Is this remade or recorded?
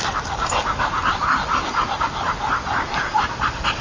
recorded